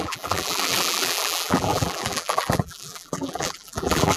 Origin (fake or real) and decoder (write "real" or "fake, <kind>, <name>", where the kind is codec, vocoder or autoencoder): fake, vocoder, BigVGAN v2